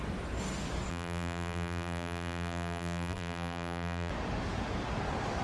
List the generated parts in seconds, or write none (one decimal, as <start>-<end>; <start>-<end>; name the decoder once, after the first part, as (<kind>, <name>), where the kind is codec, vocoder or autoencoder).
0.9-4.1 (vocoder, BigVGAN v2)